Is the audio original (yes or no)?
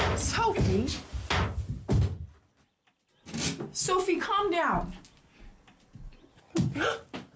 yes